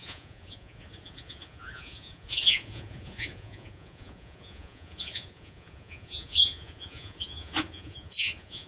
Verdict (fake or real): fake